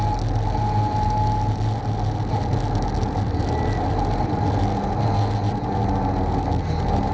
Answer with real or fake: real